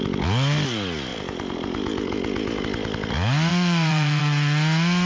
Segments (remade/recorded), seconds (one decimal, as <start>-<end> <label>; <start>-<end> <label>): 0.0-3.5 recorded; 3.5-4.2 remade; 4.2-5.0 recorded